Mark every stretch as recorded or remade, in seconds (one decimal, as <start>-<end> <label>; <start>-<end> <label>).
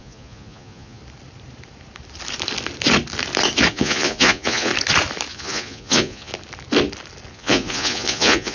0.0-1.0 remade; 1.0-3.7 recorded; 3.7-4.7 remade; 4.7-5.3 recorded; 5.3-6.3 remade; 6.3-7.3 recorded; 7.3-8.5 remade